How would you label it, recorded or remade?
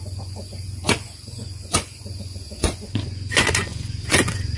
remade